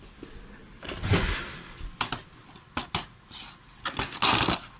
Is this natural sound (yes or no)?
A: yes